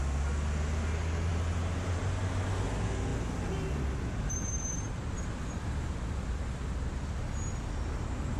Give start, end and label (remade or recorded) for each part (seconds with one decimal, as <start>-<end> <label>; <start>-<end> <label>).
0.0-1.3 recorded; 1.3-2.2 remade; 2.2-8.4 recorded